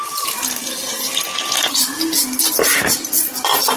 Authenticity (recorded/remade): recorded